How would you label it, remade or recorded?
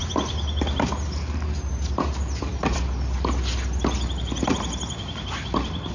recorded